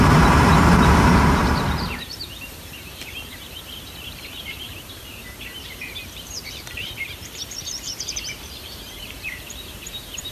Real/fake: fake